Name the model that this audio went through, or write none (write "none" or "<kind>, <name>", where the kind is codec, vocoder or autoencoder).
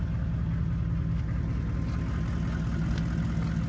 none